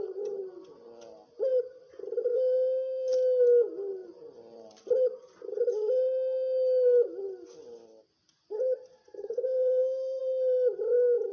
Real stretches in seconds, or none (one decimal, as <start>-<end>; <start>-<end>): 0.0-2.3; 3.1-9.2; 10.2-11.3